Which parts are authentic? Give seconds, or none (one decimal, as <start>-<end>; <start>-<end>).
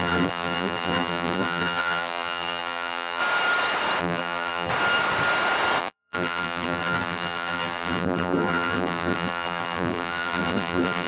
3.2-4.0; 4.7-5.8